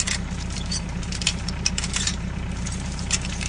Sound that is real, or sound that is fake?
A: fake